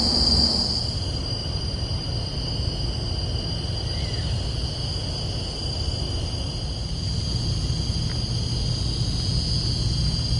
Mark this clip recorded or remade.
recorded